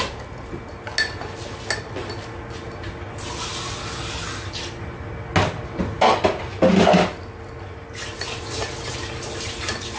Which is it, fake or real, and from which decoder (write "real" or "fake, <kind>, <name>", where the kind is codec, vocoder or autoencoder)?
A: real